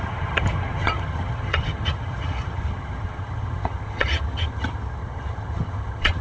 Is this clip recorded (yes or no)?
no